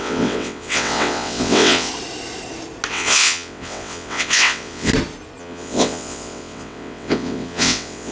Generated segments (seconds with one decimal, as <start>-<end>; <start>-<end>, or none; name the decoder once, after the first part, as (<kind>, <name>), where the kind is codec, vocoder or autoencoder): 0.0-1.9 (vocoder, WaveNeXt); 2.9-4.9; 5.4-8.1